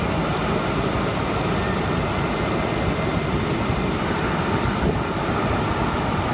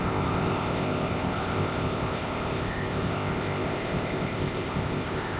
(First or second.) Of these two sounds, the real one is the first